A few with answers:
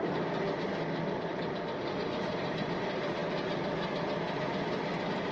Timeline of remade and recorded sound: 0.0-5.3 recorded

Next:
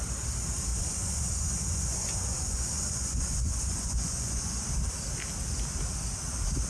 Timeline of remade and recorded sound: 0.0-0.7 recorded; 0.7-4.6 remade; 4.6-6.7 recorded

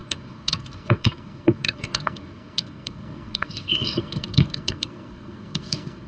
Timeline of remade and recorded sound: 0.0-6.1 remade

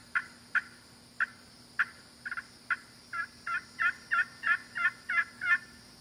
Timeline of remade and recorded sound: 0.0-3.6 remade; 3.6-6.0 recorded

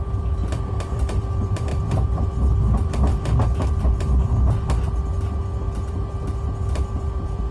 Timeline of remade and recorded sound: 0.0-3.1 remade; 3.1-5.9 recorded; 5.9-7.5 remade

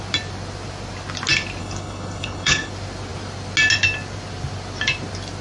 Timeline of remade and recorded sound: 0.0-1.6 recorded; 1.6-2.7 remade; 2.7-5.4 recorded